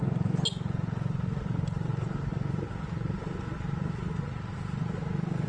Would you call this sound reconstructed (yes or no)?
no